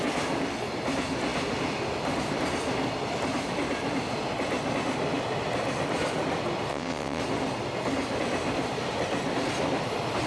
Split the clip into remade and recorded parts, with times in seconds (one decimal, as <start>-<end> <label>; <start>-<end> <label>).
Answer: 0.0-6.7 recorded; 6.7-7.2 remade; 7.2-10.3 recorded